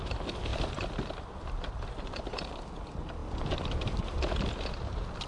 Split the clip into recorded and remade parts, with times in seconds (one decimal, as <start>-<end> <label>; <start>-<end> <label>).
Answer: 0.0-0.5 recorded; 0.5-2.1 remade; 2.1-3.2 recorded; 3.2-4.0 remade; 4.0-5.3 recorded